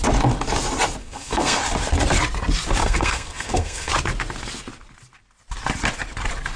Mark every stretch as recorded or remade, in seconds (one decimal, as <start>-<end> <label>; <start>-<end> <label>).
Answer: 0.0-1.0 recorded; 1.0-1.6 remade; 1.6-2.8 recorded; 2.8-3.9 remade; 3.9-6.6 recorded